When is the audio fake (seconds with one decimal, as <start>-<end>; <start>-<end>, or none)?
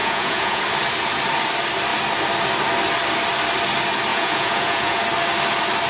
0.0-0.6; 4.1-5.0